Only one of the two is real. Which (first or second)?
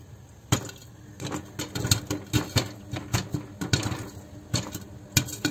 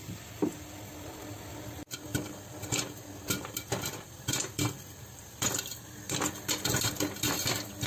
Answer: first